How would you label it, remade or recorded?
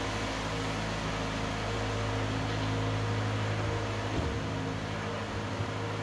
recorded